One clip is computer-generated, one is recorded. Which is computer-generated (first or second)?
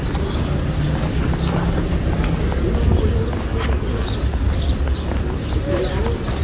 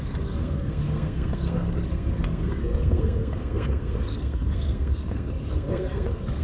second